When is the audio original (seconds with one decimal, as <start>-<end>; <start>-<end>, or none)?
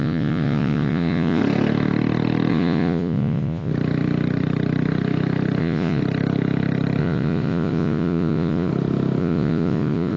1.4-2.5; 3.7-5.6; 6.0-7.0; 8.7-9.2